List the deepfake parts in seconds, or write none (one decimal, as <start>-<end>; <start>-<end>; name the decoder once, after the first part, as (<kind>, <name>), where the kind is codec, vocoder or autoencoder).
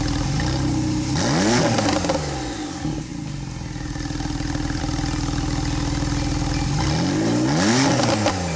none